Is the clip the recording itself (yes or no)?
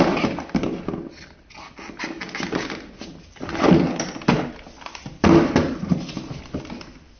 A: yes